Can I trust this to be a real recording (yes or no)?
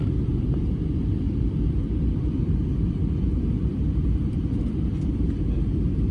no